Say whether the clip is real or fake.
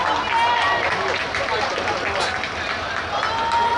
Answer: real